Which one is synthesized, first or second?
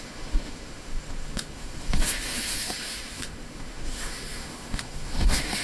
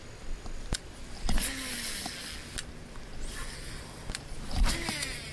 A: first